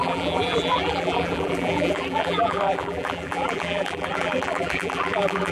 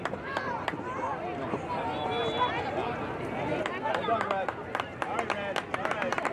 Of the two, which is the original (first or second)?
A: second